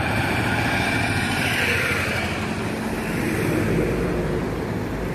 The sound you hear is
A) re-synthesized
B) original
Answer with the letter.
A